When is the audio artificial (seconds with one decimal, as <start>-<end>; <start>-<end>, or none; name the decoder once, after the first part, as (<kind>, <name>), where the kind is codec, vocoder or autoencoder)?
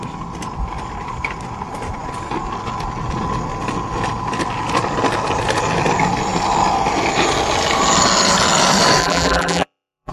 9.0-10.1 (vocoder, BigVGAN v2)